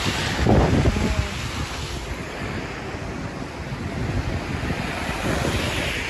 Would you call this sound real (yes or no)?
yes